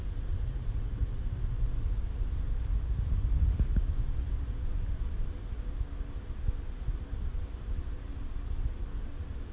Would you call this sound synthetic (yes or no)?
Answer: no